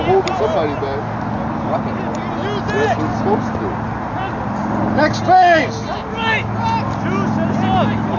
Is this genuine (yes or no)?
yes